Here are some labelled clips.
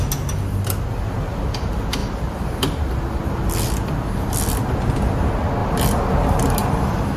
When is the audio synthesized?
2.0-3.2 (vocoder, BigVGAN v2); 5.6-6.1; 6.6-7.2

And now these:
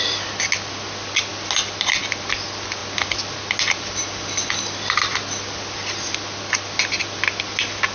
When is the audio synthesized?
none

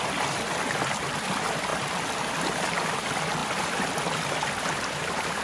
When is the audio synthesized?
none

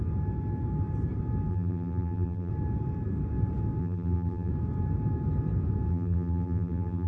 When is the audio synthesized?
1.5-2.5 (vocoder, BigVGAN v2); 3.8-4.5; 5.9-7.1

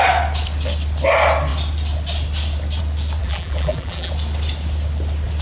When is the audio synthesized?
3.2-4.1 (vocoder, BigVGAN v2)

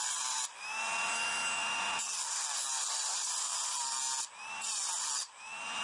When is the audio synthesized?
0.0-0.6 (vocoder, BigVGAN v2)

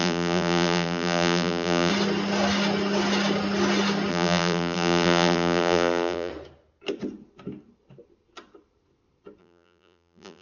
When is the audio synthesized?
0.0-1.9 (vocoder, BigVGAN v2); 4.1-6.3; 9.4-10.4